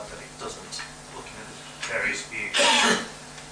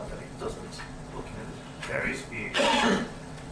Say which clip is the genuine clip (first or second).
first